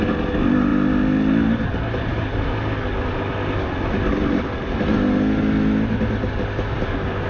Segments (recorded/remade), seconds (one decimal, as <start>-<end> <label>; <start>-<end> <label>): 0.0-7.3 recorded